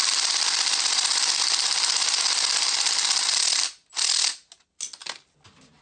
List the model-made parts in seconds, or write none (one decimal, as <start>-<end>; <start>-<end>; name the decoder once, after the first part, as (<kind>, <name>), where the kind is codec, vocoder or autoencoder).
none